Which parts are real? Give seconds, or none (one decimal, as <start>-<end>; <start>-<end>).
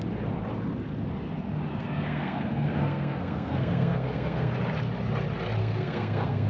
0.0-1.7; 4.5-5.6